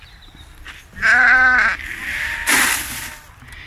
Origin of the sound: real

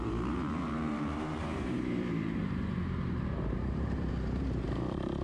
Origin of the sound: fake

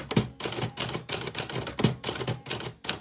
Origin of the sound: real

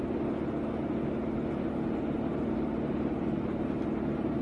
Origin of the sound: real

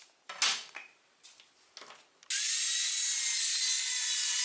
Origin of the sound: real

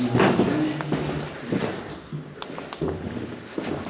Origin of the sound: real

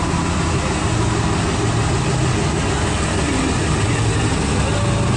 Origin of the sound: real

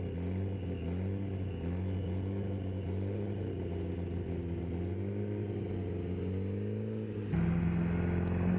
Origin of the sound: real